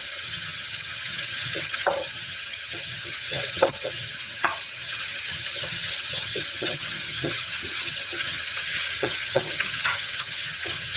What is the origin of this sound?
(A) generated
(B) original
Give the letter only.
A